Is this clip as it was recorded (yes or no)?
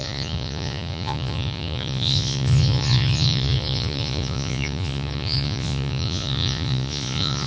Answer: no